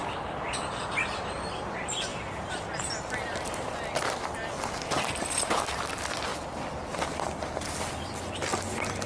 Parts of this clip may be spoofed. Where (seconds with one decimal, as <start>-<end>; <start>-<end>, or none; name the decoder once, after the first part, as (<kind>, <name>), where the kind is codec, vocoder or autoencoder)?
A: 2.1-3.7 (vocoder, BigVGAN v2)